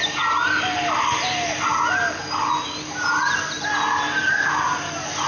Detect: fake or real real